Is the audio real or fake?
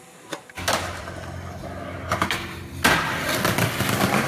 real